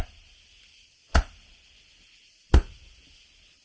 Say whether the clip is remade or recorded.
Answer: recorded